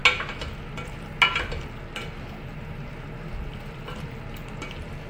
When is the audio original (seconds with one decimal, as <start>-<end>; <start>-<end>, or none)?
0.0-5.1